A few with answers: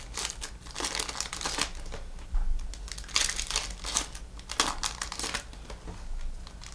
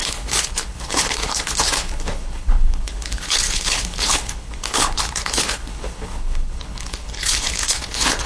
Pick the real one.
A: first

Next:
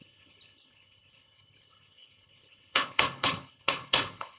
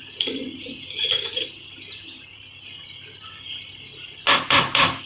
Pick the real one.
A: second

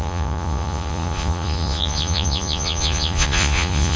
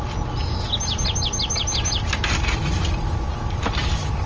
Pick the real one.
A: second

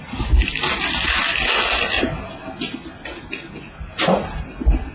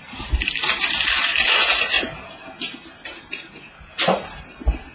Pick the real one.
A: first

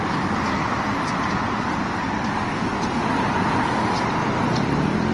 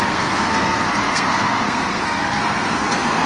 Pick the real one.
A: first